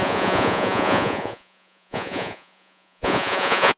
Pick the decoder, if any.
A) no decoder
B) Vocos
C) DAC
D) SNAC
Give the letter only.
B